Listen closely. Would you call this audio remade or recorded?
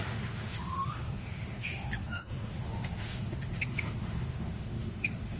remade